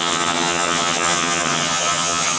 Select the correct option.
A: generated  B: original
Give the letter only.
A